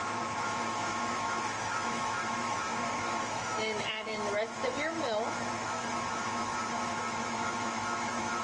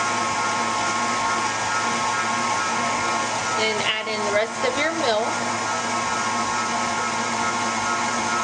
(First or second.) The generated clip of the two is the first